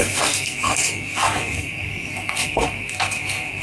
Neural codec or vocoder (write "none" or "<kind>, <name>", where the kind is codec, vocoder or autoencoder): codec, SNAC